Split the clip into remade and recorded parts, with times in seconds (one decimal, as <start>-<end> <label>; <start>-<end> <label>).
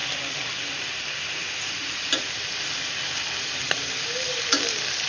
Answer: 0.0-5.1 recorded